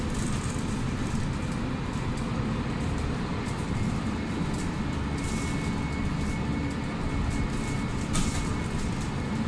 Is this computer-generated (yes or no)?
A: no